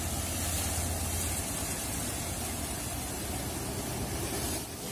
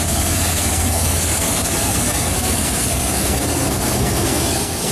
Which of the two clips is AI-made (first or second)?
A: second